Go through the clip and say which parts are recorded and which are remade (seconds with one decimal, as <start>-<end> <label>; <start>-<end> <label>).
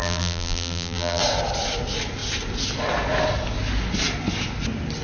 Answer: 0.0-1.2 remade; 1.2-5.0 recorded